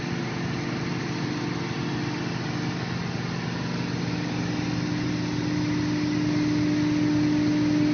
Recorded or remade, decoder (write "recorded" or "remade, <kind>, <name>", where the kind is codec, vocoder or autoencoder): recorded